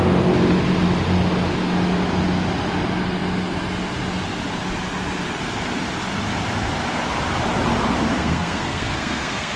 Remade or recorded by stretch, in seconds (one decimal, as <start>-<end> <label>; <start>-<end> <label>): 0.0-8.1 recorded; 8.1-9.6 remade